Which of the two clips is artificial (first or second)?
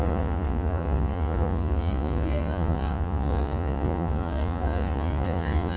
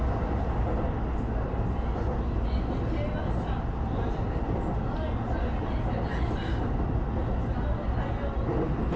first